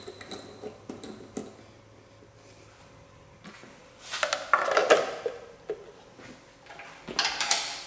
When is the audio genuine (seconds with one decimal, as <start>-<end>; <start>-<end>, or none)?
0.0-7.9